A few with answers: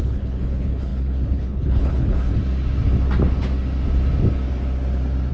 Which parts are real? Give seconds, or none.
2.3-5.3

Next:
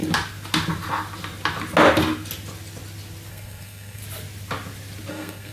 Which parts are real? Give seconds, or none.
0.0-3.3; 4.0-5.1

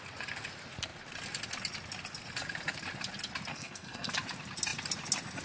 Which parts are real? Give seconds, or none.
0.0-3.5; 4.1-5.4